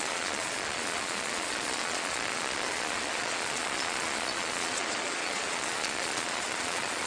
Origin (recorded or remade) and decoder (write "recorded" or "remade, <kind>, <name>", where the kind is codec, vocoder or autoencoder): remade, vocoder, Vocos